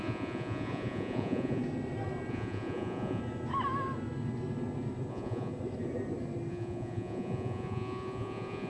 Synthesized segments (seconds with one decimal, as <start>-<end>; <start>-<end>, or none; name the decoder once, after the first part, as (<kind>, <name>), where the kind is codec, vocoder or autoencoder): 0.0-1.6 (vocoder, Vocos); 2.3-3.2; 5.1-5.5; 6.5-8.7